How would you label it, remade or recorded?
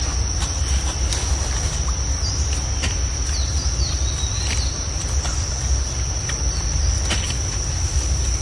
recorded